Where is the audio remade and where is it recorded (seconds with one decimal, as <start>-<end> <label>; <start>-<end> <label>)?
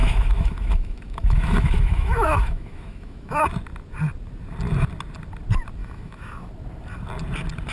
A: 0.0-3.4 remade; 3.4-5.8 recorded; 5.8-6.5 remade; 6.5-7.7 recorded